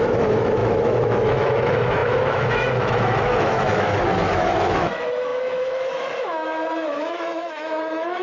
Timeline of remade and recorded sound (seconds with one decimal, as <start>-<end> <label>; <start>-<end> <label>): 0.0-8.2 remade